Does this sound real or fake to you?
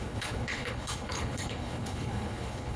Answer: fake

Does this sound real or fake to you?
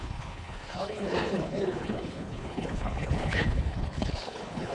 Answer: fake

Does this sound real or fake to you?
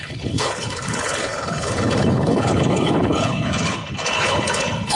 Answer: fake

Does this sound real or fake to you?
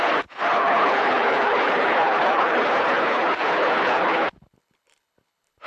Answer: fake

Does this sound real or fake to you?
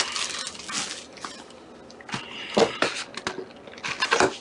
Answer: real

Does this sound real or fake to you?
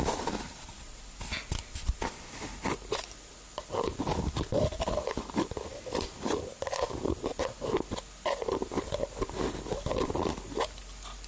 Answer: real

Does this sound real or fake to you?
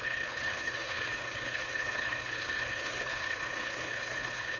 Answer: fake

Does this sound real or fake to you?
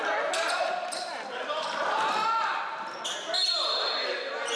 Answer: real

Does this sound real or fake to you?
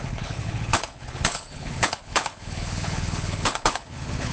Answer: fake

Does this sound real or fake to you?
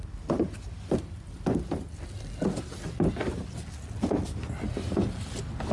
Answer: real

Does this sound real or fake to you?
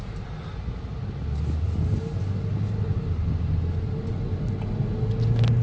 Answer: real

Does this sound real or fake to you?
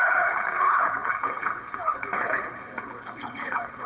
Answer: fake